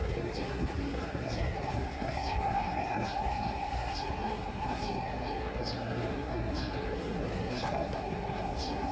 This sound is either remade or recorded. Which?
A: remade